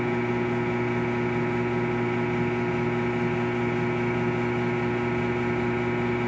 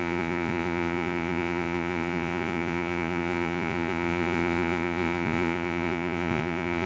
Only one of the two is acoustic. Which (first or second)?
first